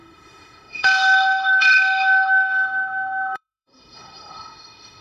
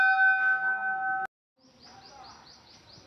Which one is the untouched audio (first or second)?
second